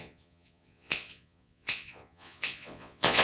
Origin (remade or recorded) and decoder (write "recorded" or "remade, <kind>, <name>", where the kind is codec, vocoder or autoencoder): remade, vocoder, Vocos